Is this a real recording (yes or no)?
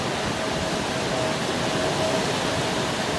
yes